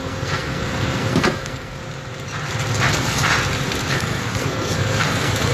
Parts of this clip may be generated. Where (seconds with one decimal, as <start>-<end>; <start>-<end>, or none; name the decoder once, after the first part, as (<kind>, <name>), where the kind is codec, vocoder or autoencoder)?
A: 0.0-1.8 (codec, SNAC); 2.9-3.3; 3.9-5.5